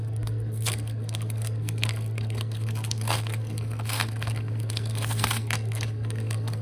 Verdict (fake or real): fake